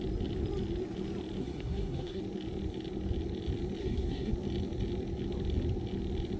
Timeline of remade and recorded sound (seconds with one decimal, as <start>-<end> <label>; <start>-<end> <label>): 0.0-1.4 recorded; 1.4-2.2 remade; 2.2-3.8 recorded; 3.8-4.3 remade; 4.3-6.4 recorded